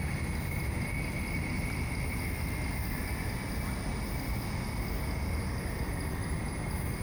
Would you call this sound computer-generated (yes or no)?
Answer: no